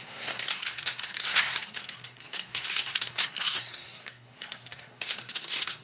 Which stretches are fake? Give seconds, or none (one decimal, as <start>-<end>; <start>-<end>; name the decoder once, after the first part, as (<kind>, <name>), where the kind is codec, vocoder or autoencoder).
0.0-5.8 (codec, SNAC)